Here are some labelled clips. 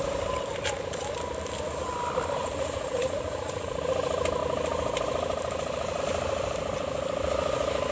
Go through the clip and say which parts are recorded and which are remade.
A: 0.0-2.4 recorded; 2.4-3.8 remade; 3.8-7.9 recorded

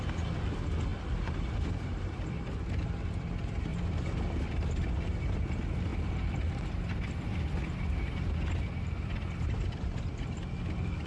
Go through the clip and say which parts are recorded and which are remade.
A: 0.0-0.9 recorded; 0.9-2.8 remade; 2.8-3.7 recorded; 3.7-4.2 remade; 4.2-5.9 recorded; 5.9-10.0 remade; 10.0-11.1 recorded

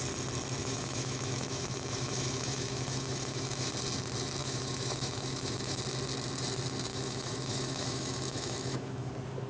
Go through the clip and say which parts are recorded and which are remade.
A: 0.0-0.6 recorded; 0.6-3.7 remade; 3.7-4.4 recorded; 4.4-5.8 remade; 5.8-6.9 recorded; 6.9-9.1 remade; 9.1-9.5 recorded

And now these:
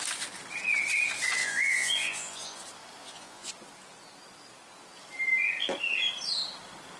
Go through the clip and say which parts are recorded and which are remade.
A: 0.0-1.4 recorded; 1.4-2.6 remade; 2.6-3.0 recorded; 3.0-3.5 remade; 3.5-7.0 recorded

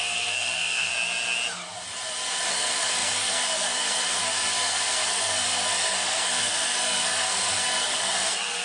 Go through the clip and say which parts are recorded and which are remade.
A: 0.0-0.9 remade; 0.9-2.5 recorded; 2.5-8.6 remade

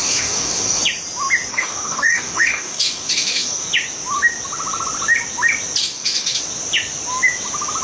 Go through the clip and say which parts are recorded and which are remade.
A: 0.0-0.8 remade; 0.8-1.5 recorded; 1.5-3.7 remade; 3.7-5.8 recorded; 5.8-6.4 remade; 6.4-7.8 recorded

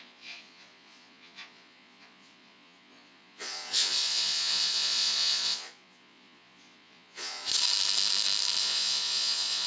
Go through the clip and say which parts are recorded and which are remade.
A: 0.0-7.5 remade; 7.5-8.6 recorded; 8.6-9.7 remade